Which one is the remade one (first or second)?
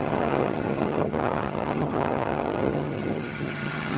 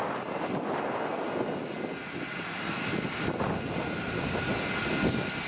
first